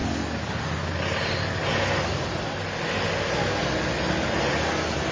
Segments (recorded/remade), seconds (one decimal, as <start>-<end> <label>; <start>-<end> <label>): 0.0-5.1 recorded